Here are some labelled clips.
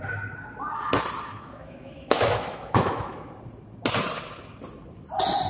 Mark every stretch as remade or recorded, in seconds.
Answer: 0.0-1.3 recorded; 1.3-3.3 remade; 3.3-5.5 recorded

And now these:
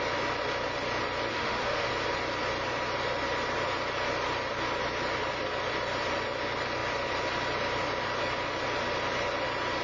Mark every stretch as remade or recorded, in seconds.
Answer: 0.0-1.3 recorded; 1.3-1.9 remade; 1.9-9.8 recorded

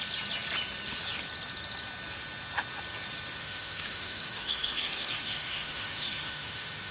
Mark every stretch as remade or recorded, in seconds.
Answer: 0.0-3.4 recorded; 3.4-6.9 remade

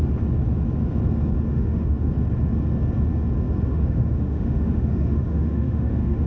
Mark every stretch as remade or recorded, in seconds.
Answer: 0.0-1.5 recorded; 1.5-2.1 remade; 2.1-3.7 recorded; 3.7-6.3 remade

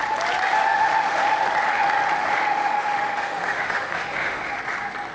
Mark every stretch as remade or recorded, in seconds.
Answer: 0.0-0.7 recorded; 0.7-1.4 remade; 1.4-2.2 recorded; 2.2-4.5 remade; 4.5-5.1 recorded

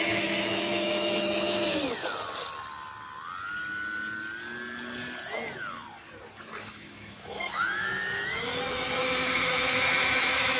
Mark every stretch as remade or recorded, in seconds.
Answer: 0.0-1.8 remade; 1.8-6.6 recorded; 6.6-10.6 remade

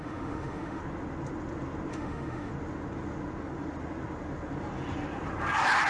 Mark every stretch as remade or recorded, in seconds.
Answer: 0.0-0.8 remade; 0.8-1.9 recorded; 1.9-2.5 remade; 2.5-5.9 recorded